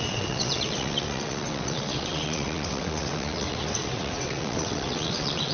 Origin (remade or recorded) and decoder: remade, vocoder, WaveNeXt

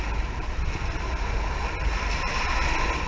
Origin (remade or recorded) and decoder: recorded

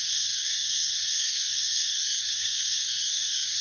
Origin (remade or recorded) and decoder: remade, codec, SNAC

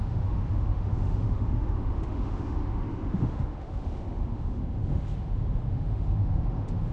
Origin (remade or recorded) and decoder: remade, autoencoder, DAC-VAE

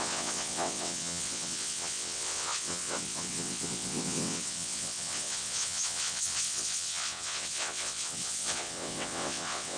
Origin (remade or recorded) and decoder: remade, vocoder, WaveNeXt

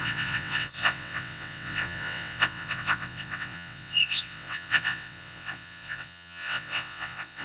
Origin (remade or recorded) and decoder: remade, vocoder, WaveNeXt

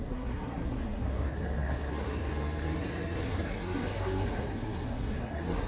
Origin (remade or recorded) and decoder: remade, codec, SNAC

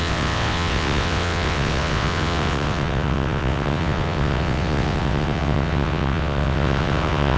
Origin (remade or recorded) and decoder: remade, vocoder, WaveNeXt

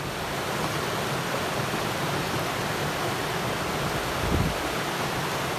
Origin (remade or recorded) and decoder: recorded